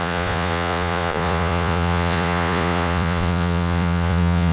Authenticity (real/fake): fake